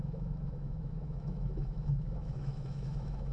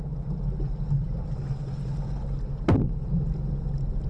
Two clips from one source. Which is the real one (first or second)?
second